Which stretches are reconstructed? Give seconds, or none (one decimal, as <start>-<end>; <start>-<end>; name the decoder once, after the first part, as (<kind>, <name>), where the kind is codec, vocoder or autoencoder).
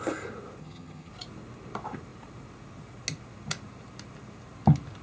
0.6-1.1 (vocoder, HiFi-GAN)